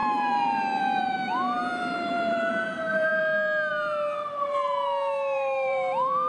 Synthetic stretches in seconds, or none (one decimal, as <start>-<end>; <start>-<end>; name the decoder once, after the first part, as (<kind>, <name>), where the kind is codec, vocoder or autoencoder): 0.0-3.1 (vocoder, BigVGAN v2); 3.7-6.3